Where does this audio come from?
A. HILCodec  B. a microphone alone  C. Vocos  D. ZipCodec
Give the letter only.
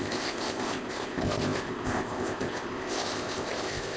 D